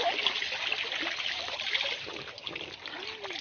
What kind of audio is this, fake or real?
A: real